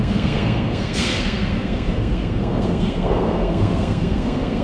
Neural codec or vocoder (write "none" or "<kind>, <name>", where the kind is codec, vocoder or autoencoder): codec, SNAC